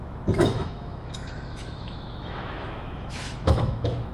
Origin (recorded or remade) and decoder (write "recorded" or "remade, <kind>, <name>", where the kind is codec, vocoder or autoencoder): remade, autoencoder, DAC-VAE